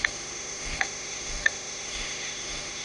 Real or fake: fake